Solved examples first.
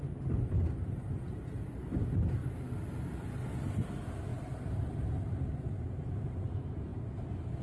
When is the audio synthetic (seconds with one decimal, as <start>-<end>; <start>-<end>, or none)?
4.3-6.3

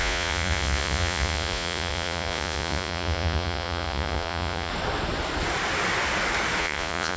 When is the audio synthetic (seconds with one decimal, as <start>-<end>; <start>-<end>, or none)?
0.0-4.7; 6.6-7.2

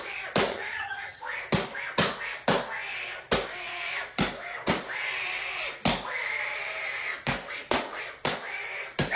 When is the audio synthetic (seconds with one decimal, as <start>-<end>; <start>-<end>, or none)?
0.5-1.2

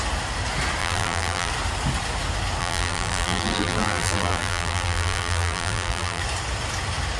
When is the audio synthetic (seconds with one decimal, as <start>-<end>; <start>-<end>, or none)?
0.8-1.5; 2.6-6.2

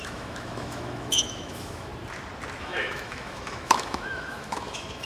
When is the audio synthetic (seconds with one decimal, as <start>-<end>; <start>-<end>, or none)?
0.0-1.9; 2.6-5.0

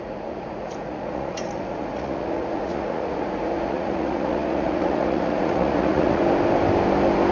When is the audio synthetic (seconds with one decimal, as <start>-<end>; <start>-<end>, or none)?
0.0-6.2